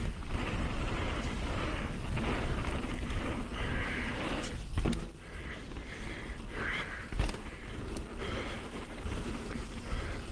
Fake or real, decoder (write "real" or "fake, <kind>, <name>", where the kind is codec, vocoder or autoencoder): real